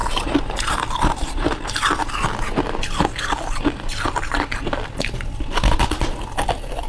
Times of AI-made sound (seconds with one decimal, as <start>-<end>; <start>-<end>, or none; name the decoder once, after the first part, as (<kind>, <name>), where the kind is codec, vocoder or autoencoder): 0.0-0.7 (vocoder, BigVGAN v2)